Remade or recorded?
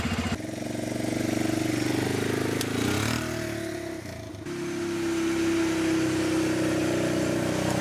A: recorded